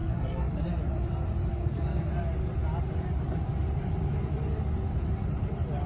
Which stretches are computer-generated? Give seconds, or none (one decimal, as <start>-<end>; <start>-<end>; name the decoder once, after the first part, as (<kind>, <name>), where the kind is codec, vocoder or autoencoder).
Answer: 0.0-0.6 (codec, SNAC); 1.5-2.1